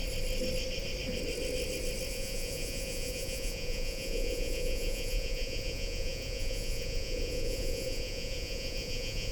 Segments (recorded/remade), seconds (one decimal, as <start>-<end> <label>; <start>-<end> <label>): 0.0-2.1 recorded; 2.1-9.3 remade